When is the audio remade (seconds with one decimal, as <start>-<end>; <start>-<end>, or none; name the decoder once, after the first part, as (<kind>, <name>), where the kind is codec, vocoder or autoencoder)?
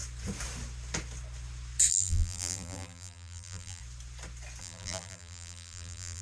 1.9-3.8 (vocoder, BigVGAN v2); 4.6-6.2